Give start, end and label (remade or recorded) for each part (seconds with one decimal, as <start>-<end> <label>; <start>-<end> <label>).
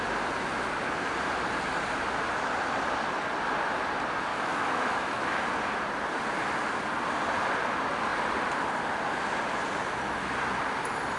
0.0-4.3 recorded; 4.3-5.4 remade; 5.4-11.2 recorded